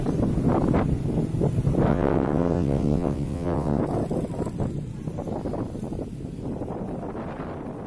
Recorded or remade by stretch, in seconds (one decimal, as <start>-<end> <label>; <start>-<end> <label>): 0.0-1.9 recorded; 1.9-3.8 remade; 3.8-7.9 recorded